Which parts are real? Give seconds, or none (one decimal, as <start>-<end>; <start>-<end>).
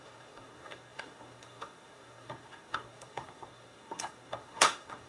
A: none